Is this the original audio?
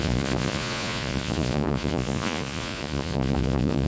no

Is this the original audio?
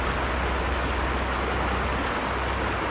yes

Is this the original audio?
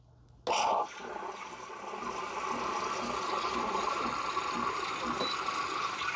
yes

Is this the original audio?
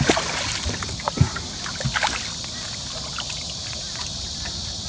yes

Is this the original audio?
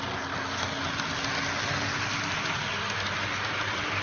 yes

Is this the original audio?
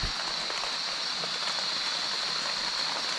yes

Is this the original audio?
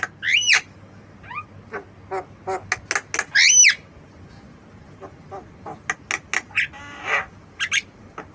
yes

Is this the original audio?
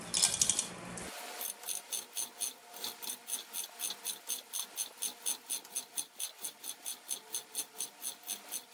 yes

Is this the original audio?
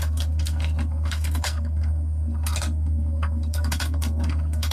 no